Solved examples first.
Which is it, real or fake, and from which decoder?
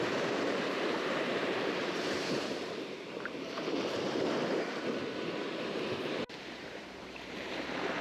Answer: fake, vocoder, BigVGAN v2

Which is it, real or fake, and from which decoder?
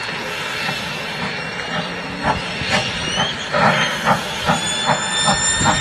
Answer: real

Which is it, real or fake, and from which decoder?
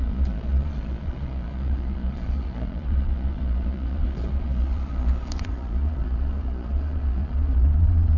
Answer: fake, vocoder, Vocos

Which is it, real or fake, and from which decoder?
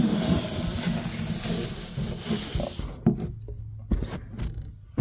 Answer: real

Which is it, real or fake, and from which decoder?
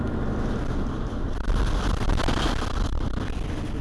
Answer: real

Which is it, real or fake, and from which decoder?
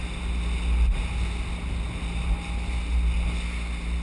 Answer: real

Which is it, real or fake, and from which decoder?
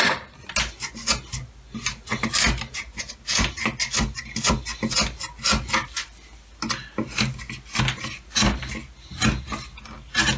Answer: real